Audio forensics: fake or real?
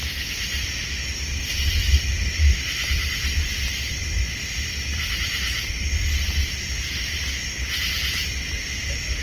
real